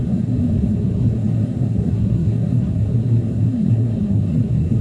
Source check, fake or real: fake